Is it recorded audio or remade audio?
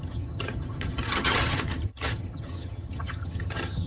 remade